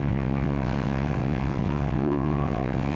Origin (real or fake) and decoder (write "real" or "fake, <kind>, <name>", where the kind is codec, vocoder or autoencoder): fake, vocoder, WaveNeXt